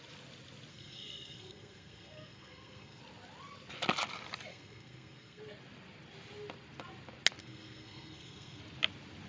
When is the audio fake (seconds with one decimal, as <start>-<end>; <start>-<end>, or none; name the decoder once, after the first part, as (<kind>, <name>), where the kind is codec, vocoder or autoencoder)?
0.7-3.0 (codec, SNAC); 4.5-5.4; 7.4-8.6